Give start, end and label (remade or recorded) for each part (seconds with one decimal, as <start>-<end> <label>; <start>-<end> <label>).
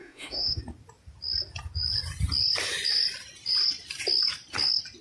0.0-0.6 remade; 0.6-5.0 recorded